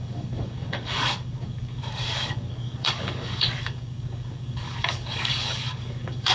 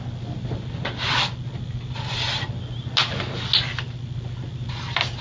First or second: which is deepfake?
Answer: first